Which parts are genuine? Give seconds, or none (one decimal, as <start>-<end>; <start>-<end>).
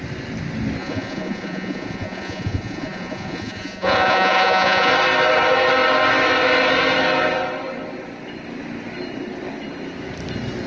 0.0-0.8; 4.9-10.7